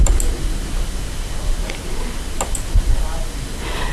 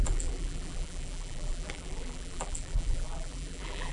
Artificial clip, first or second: second